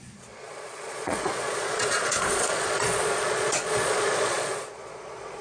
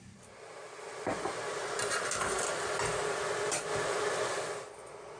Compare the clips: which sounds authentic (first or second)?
second